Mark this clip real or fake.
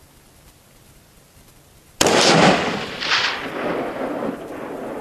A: real